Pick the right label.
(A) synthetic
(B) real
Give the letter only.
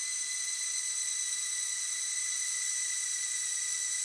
B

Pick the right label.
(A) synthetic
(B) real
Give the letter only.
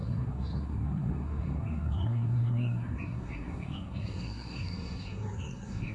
A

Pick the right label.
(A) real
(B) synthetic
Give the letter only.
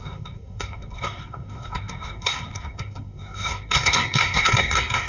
B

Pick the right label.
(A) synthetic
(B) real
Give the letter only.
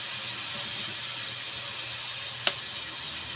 B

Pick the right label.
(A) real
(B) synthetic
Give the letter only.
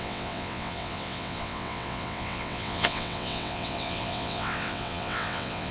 B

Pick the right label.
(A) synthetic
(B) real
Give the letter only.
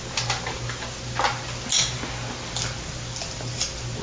B